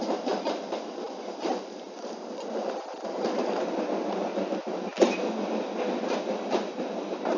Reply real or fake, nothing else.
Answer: real